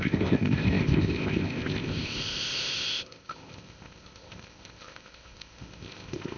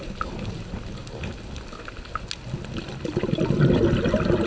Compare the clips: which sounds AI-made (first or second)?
first